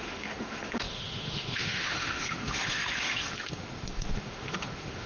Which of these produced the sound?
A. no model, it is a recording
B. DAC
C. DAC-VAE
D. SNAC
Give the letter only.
C